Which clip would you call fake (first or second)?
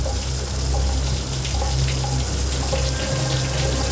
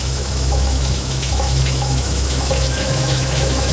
second